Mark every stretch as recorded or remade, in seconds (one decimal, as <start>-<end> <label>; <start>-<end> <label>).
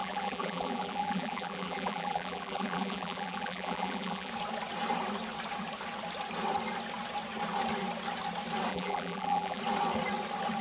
0.0-4.3 remade; 4.3-8.7 recorded; 8.7-9.6 remade; 9.6-10.6 recorded